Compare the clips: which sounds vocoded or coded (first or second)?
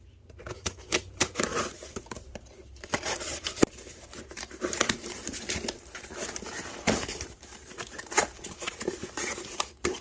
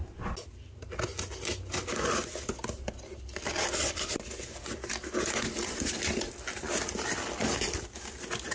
first